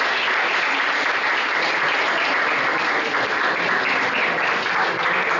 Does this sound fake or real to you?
real